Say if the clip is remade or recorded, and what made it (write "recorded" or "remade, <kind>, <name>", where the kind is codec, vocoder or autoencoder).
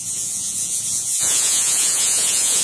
remade, vocoder, Vocos